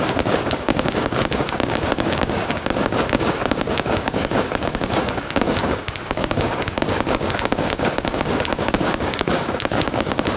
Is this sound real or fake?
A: fake